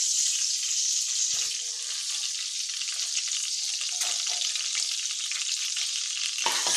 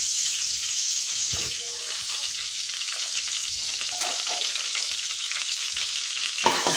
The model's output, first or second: second